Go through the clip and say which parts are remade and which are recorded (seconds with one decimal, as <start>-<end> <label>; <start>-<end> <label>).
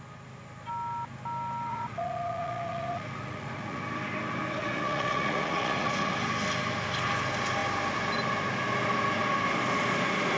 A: 0.0-1.7 recorded; 1.7-3.8 remade; 3.8-4.6 recorded; 4.6-6.1 remade; 6.1-10.4 recorded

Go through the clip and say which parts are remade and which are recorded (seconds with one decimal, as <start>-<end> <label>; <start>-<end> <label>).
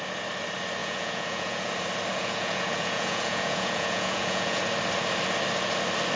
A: 0.0-0.8 recorded; 0.8-1.7 remade; 1.7-2.1 recorded; 2.1-4.6 remade; 4.6-6.2 recorded